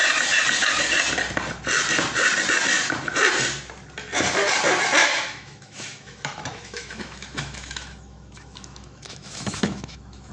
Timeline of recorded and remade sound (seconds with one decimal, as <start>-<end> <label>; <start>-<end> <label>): 0.0-5.0 recorded; 5.0-10.3 remade